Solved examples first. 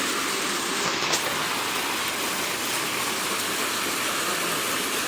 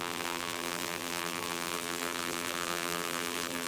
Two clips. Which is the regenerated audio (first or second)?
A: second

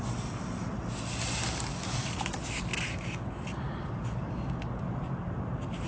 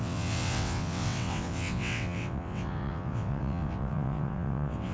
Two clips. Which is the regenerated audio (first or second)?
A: second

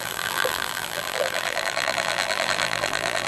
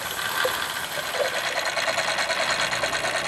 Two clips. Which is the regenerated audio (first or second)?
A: first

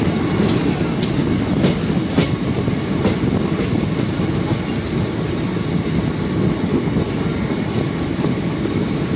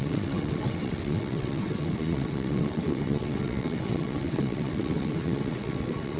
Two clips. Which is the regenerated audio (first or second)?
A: second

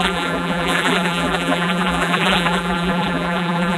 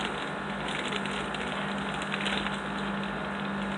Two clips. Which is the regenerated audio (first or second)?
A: first